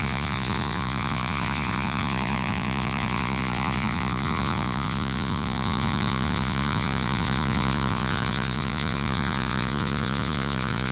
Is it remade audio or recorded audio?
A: remade